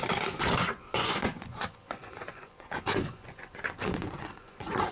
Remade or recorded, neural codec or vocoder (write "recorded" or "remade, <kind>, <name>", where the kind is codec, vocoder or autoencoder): remade, vocoder, Vocos